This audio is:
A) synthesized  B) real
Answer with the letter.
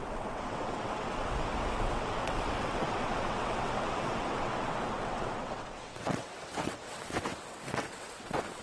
A